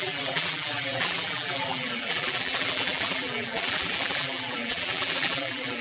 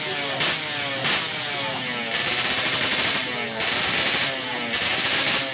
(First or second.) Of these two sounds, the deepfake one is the first